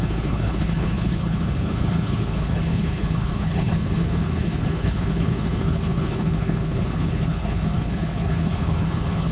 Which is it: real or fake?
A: fake